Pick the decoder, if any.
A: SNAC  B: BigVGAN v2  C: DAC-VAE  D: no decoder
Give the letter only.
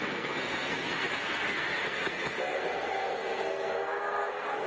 A